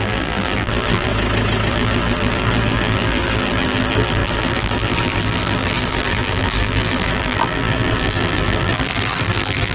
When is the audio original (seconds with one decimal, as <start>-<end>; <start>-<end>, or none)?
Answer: 1.1-1.7